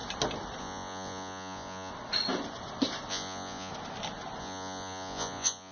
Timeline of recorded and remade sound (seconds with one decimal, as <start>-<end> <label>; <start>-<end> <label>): 0.0-0.6 recorded; 0.6-1.9 remade; 1.9-3.1 recorded; 3.1-3.7 remade; 3.7-4.4 recorded; 4.4-5.7 remade